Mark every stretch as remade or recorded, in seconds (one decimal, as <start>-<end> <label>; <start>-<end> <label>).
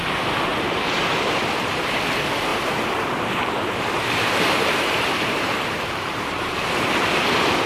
0.0-0.5 recorded; 0.5-2.0 remade; 2.0-2.5 recorded; 2.5-7.1 remade; 7.1-7.7 recorded